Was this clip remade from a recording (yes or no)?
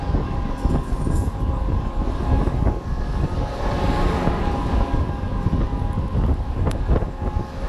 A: yes